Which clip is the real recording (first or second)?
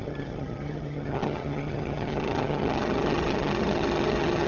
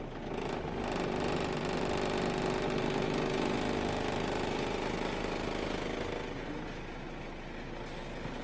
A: second